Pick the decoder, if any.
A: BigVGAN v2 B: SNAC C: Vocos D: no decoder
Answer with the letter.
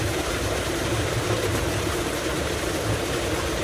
A